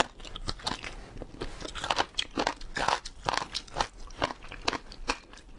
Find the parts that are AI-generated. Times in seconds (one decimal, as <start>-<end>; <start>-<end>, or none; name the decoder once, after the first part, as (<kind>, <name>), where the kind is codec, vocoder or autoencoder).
1.7-5.1 (vocoder, BigVGAN v2)